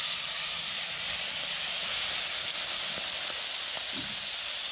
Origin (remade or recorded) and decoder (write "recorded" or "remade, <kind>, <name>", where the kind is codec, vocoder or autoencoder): recorded